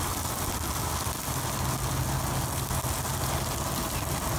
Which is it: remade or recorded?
recorded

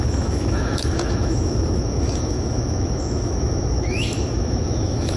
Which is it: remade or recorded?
remade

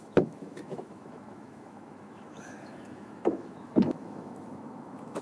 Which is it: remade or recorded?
remade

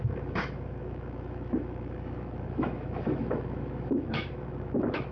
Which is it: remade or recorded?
remade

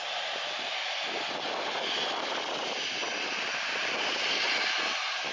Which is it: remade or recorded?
recorded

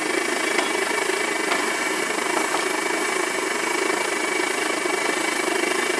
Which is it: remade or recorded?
recorded